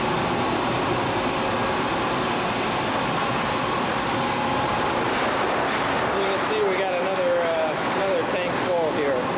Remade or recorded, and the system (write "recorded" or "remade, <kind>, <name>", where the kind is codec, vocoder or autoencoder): recorded